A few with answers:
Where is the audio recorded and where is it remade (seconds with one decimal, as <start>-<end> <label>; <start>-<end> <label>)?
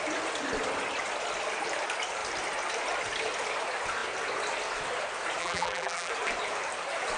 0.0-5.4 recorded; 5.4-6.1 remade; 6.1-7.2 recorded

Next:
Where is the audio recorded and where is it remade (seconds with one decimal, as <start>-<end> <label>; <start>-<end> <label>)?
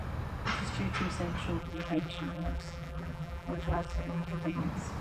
0.0-1.6 recorded; 1.6-4.6 remade; 4.6-5.0 recorded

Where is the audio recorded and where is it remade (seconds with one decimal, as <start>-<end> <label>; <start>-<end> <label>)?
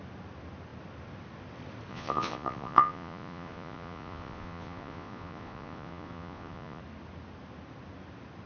0.0-1.9 recorded; 1.9-6.8 remade; 6.8-8.5 recorded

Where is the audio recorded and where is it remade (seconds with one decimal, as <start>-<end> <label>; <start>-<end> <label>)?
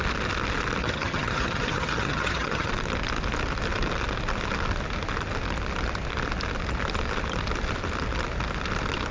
0.0-0.8 recorded; 0.8-2.7 remade; 2.7-9.1 recorded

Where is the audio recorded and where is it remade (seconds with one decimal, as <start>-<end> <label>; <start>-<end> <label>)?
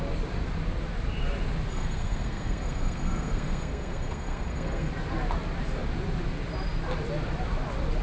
0.0-1.7 recorded; 1.7-4.9 remade; 4.9-8.0 recorded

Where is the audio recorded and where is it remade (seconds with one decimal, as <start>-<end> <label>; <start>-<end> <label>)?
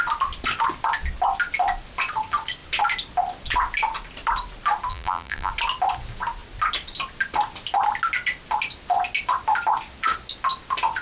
0.0-4.9 recorded; 4.9-5.5 remade; 5.5-11.0 recorded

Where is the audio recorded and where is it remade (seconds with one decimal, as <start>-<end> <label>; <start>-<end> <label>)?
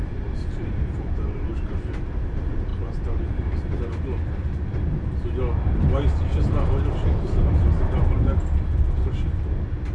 0.0-1.5 remade; 1.5-2.7 recorded; 2.7-3.8 remade; 3.8-9.9 recorded